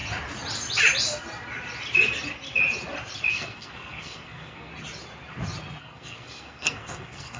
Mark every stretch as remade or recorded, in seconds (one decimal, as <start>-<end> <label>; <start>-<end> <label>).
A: 0.0-3.3 recorded; 3.3-4.7 remade; 4.7-5.8 recorded; 5.8-7.4 remade